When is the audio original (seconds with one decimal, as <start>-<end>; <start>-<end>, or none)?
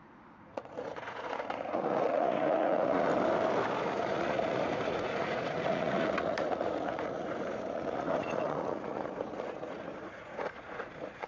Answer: 3.1-3.8